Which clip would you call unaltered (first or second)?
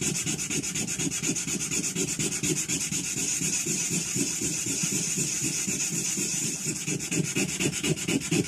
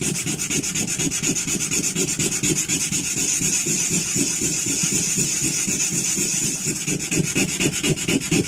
second